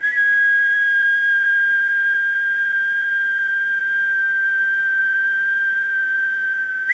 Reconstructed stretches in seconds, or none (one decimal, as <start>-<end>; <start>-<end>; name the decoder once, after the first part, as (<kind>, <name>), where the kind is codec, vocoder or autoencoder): 0.6-3.8 (vocoder, BigVGAN v2); 5.0-6.9